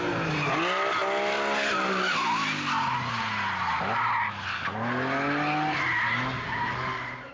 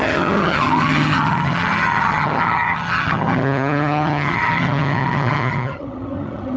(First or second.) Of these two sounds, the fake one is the second